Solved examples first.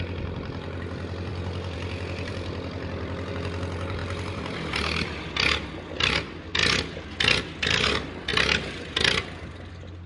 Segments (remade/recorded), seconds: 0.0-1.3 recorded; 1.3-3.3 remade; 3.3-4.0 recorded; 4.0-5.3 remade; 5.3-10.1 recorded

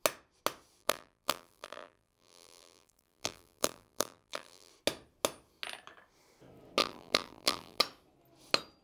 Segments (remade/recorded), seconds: 0.0-0.8 recorded; 0.8-4.7 remade; 4.7-6.8 recorded; 6.8-7.8 remade; 7.8-8.8 recorded